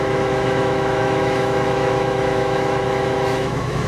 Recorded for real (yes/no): no